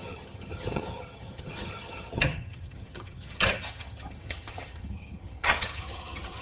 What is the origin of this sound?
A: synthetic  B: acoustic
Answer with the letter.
A